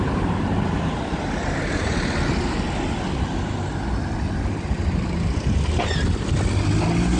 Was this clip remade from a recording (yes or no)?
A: no